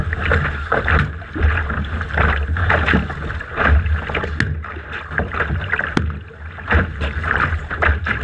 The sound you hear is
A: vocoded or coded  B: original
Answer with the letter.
B